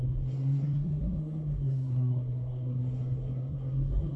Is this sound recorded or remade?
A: remade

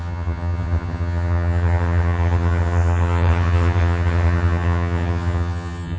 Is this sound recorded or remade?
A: remade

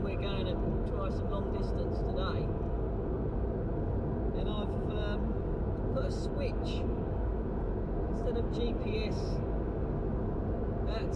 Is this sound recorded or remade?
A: recorded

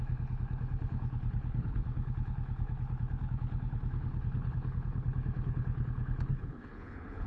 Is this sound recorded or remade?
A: remade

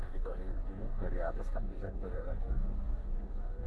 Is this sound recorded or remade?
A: remade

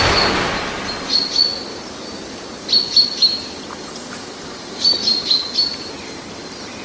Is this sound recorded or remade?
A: recorded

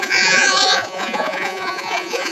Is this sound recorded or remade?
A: remade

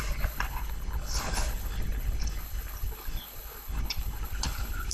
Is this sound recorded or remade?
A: remade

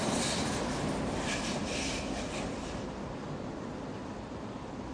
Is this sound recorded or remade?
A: recorded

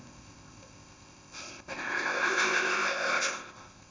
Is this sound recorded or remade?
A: remade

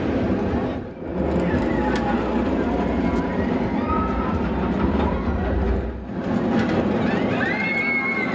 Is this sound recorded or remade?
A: recorded